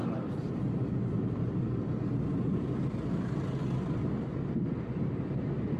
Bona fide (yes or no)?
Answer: yes